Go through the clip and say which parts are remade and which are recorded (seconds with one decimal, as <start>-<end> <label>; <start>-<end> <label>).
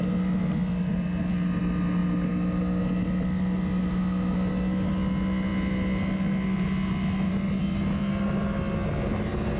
0.0-9.6 recorded